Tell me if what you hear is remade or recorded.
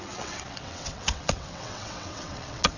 remade